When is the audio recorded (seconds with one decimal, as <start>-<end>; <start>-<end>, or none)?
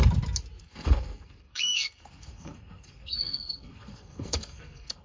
0.0-0.6